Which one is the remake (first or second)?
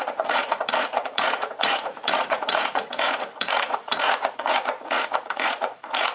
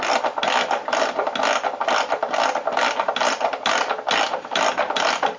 first